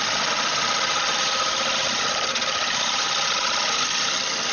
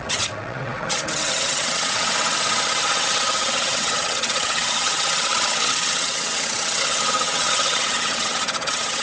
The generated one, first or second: second